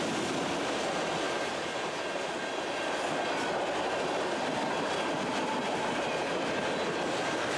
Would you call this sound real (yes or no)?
yes